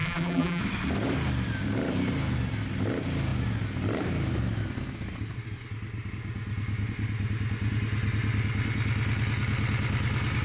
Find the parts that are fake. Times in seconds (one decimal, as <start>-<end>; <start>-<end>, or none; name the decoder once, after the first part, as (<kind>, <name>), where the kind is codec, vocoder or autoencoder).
0.0-0.6 (vocoder, BigVGAN v2)